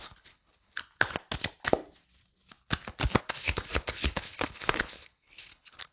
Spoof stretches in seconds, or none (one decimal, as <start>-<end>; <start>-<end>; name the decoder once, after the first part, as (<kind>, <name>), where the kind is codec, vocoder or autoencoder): 0.0-0.8 (codec, HILCodec); 3.2-5.9